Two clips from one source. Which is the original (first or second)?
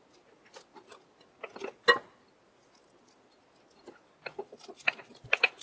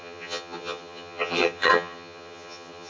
first